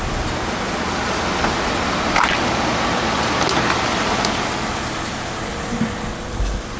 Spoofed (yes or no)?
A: no